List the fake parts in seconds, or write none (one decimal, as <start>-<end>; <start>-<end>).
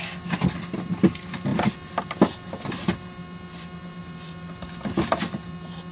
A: none